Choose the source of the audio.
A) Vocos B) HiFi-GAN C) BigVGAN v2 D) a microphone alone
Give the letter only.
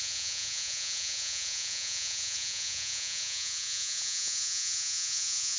A